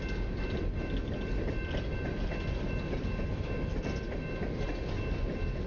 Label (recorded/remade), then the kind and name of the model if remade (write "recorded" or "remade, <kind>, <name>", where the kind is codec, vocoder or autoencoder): recorded